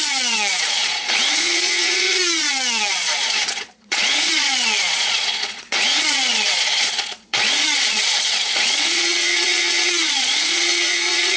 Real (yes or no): no